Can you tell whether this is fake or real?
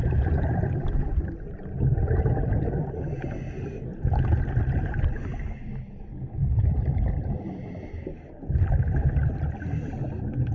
real